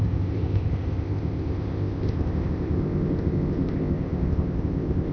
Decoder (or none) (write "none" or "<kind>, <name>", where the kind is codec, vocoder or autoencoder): codec, ZipCodec